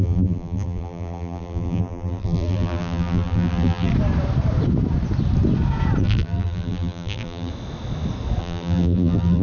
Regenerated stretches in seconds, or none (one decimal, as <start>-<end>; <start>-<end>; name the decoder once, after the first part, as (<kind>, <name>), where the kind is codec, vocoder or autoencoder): 0.0-3.9 (vocoder, BigVGAN v2); 6.0-7.5; 8.4-9.4